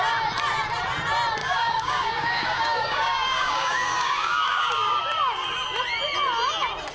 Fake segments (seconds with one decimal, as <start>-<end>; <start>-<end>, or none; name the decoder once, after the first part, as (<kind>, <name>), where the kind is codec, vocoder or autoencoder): 1.4-5.0 (codec, DAC)